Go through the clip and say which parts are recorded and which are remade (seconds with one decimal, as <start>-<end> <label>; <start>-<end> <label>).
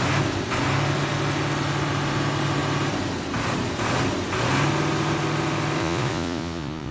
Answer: 0.0-5.8 recorded; 5.8-6.9 remade